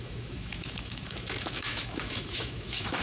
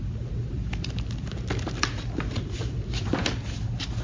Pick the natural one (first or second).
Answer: second